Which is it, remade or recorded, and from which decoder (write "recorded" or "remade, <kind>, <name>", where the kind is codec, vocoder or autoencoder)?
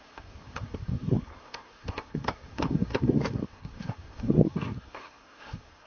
remade, codec, SNAC